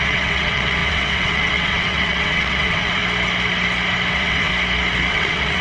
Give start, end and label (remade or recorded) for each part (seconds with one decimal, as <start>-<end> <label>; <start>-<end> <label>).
0.0-3.0 remade; 3.0-4.1 recorded; 4.1-4.5 remade; 4.5-5.1 recorded; 5.1-5.6 remade